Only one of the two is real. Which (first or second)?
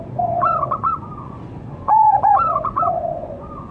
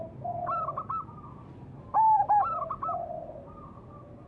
second